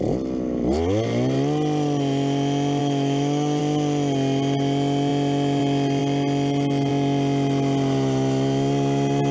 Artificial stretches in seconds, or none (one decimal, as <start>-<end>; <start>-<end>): 2.8-3.6